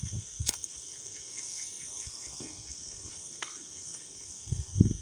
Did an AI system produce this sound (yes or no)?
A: yes